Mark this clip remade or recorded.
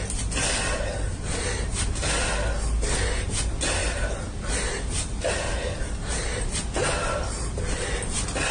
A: recorded